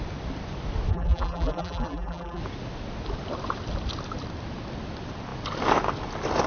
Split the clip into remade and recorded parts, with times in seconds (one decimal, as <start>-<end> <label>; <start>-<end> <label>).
0.0-0.9 recorded; 0.9-2.4 remade; 2.4-6.5 recorded